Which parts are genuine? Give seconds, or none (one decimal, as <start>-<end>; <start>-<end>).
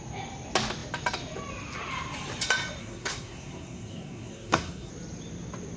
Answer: 0.0-2.8; 4.9-5.8